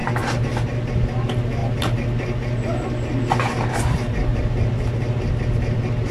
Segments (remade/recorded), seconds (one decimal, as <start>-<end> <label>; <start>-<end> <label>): 0.0-6.1 recorded